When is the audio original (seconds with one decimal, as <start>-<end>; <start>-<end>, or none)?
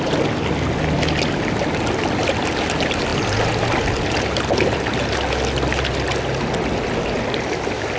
0.0-8.0